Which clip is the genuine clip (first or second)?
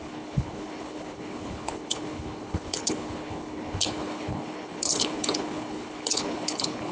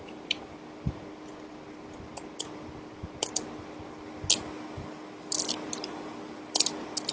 second